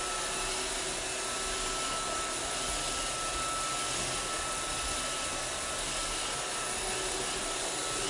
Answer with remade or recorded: recorded